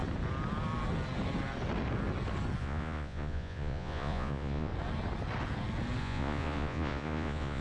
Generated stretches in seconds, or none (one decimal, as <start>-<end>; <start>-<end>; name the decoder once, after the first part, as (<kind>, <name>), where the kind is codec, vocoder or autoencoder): 2.6-4.7 (vocoder, Vocos); 6.0-7.6